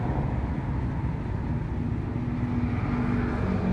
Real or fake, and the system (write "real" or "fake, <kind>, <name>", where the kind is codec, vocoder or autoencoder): real